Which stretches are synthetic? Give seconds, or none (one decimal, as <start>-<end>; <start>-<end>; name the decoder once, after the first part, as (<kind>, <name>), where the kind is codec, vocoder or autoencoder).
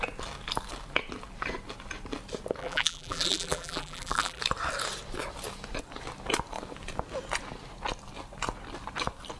2.6-4.4 (vocoder, BigVGAN v2)